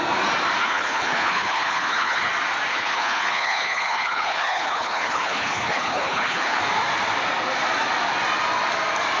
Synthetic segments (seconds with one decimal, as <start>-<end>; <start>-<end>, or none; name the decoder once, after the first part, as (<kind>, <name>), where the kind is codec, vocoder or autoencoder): 0.6-2.3 (codec, HILCodec); 2.7-6.6